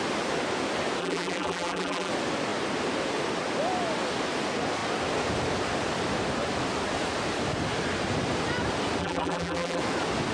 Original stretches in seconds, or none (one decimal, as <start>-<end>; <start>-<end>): 0.0-1.0; 2.1-9.0; 9.8-10.3